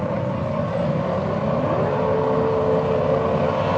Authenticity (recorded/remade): recorded